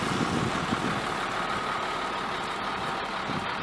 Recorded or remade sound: recorded